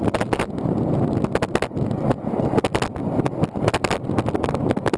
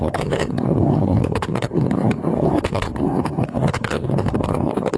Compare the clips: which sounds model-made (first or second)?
second